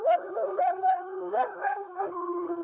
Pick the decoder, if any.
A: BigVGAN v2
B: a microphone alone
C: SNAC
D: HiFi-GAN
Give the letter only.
C